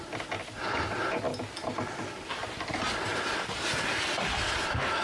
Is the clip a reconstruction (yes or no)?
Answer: no